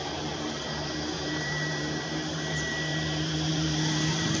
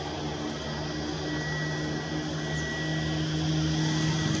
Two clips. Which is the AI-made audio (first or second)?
first